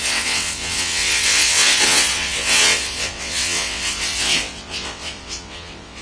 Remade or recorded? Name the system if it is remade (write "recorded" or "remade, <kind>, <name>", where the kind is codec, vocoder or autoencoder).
remade, vocoder, WaveNeXt